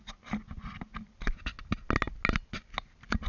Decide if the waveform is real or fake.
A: real